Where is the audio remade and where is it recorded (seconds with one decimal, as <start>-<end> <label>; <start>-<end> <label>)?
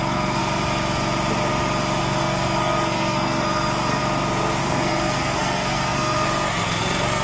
0.0-0.4 remade; 0.4-2.0 recorded; 2.0-4.0 remade; 4.0-4.6 recorded; 4.6-7.2 remade